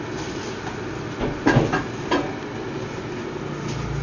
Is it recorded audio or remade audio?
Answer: recorded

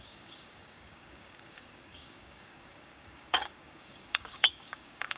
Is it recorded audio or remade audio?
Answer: remade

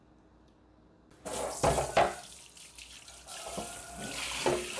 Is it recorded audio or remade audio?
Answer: recorded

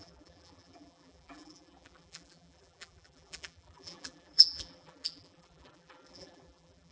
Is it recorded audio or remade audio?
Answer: remade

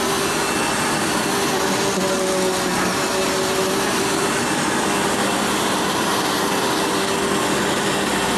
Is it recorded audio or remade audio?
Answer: recorded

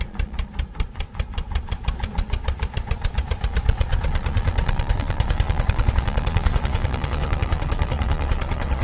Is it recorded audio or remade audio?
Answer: remade